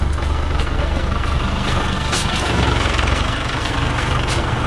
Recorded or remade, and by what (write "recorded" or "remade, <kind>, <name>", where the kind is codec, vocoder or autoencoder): remade, codec, SNAC